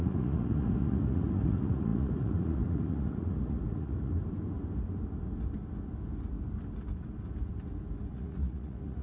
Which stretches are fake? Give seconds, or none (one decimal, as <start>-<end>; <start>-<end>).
0.0-4.1; 8.1-9.0